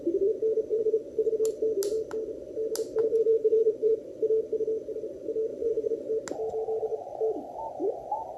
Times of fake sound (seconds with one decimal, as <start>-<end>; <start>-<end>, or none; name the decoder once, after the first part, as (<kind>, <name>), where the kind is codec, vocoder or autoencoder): 0.7-1.3 (vocoder, Vocos); 3.0-4.0; 5.5-6.1